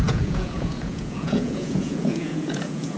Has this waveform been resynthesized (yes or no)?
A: yes